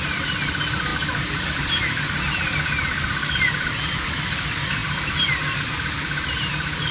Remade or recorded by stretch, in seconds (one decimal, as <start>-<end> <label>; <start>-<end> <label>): 0.0-6.9 recorded